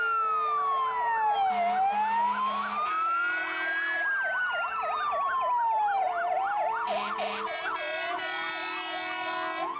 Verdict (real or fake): real